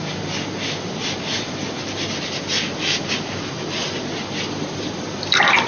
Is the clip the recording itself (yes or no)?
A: yes